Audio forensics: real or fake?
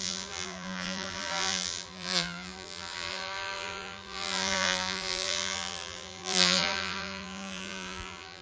fake